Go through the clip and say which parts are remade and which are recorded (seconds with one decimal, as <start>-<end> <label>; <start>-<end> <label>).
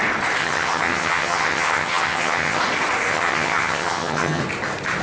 0.0-0.4 recorded; 0.4-2.6 remade; 2.6-3.1 recorded; 3.1-4.4 remade; 4.4-5.0 recorded